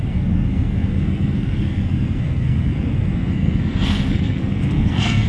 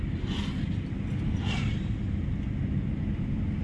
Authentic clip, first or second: second